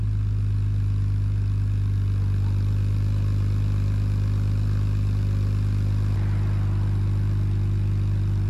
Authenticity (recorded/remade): recorded